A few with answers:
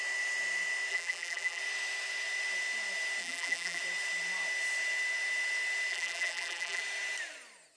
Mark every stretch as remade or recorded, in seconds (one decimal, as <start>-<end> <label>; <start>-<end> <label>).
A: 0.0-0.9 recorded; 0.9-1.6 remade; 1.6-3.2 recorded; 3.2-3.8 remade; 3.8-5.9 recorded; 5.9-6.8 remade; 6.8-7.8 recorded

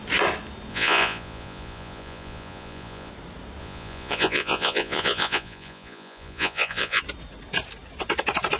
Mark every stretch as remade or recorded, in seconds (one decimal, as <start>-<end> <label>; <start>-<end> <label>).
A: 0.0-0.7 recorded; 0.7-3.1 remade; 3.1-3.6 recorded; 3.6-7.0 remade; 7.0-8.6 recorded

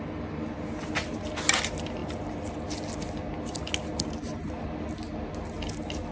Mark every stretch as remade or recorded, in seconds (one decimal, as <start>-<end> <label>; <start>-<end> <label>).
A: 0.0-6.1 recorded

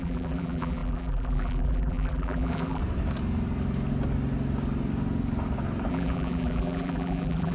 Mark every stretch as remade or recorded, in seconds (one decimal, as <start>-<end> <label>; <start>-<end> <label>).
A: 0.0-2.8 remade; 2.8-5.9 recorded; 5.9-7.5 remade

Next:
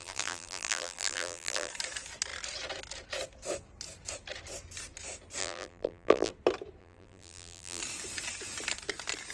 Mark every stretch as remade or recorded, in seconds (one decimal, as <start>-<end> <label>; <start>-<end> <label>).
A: 0.0-1.7 remade; 1.7-5.4 recorded; 5.4-6.3 remade; 6.3-6.8 recorded; 6.8-7.8 remade; 7.8-9.3 recorded

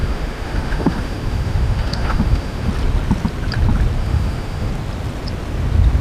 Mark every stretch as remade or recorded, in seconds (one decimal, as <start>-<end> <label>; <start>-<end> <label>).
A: 0.0-2.7 remade; 2.7-4.0 recorded; 4.0-4.7 remade; 4.7-6.0 recorded